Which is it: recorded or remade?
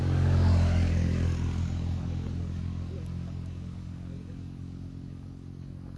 remade